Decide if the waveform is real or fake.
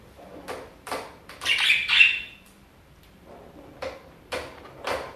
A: fake